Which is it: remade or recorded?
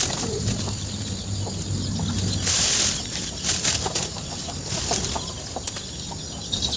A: recorded